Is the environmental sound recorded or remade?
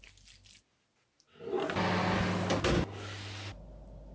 recorded